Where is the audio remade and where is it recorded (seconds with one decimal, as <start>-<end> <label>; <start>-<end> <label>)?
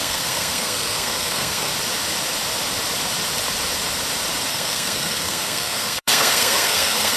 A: 0.0-1.7 remade; 1.7-4.5 recorded; 4.5-7.2 remade